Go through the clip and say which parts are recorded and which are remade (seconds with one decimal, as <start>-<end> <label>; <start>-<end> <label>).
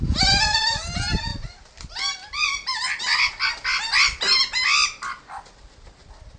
0.0-1.3 recorded; 1.3-3.0 remade; 3.0-6.4 recorded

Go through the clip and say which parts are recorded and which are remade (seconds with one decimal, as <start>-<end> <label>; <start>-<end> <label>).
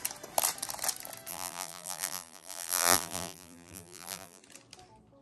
0.0-1.3 recorded; 1.3-4.4 remade; 4.4-5.2 recorded